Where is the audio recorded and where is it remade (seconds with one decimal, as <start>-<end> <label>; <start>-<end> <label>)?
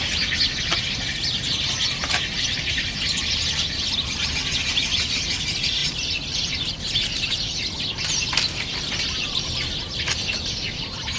0.0-11.2 recorded